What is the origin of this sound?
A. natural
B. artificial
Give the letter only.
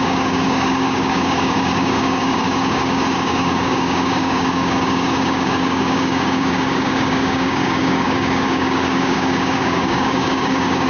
B